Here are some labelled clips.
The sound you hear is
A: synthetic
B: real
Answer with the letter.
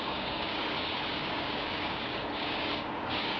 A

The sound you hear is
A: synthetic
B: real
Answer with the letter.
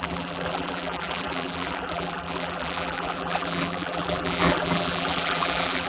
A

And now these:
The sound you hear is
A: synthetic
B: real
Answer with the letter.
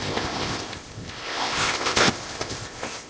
A